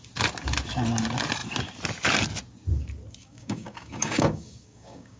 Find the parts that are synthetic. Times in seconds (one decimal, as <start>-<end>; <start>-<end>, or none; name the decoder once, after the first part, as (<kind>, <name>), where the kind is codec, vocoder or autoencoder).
3.2-5.2 (codec, DAC)